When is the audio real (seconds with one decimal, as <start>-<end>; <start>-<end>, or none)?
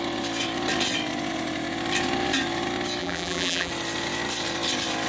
0.0-3.0; 3.7-5.1